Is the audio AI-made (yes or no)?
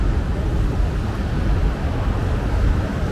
no